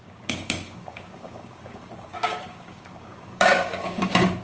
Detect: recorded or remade remade